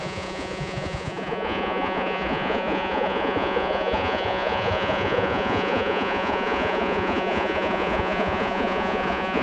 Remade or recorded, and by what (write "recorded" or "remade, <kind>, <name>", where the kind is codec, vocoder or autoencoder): remade, vocoder, Vocos